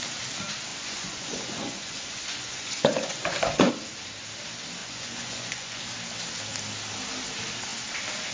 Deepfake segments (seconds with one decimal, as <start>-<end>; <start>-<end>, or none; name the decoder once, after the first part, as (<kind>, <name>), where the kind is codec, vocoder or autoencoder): 0.7-3.7 (vocoder, Vocos); 4.8-5.8